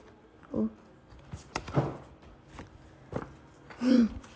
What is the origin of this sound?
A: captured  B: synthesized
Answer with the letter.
A